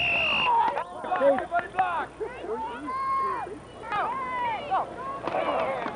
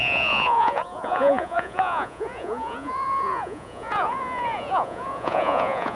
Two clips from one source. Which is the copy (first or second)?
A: second